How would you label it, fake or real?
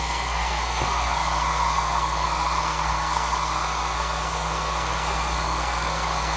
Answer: fake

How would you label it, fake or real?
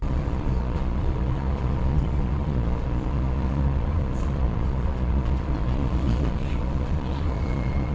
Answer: fake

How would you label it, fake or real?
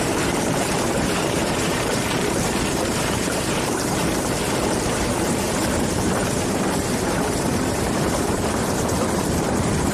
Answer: fake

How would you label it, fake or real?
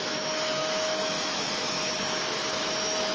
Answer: fake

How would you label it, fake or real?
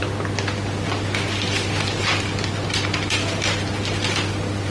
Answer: real